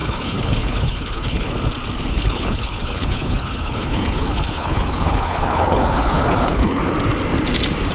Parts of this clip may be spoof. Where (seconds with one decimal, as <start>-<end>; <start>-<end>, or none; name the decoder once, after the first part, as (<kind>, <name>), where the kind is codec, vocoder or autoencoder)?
0.0-1.5 (codec, HILCodec); 2.1-6.8